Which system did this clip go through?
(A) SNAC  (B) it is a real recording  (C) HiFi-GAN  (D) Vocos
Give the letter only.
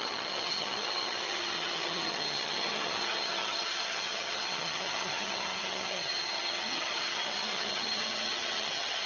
C